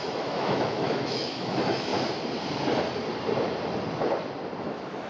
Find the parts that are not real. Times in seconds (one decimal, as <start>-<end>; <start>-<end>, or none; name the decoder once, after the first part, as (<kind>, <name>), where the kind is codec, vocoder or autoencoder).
0.0-1.9 (autoencoder, DAC-VAE); 4.6-5.1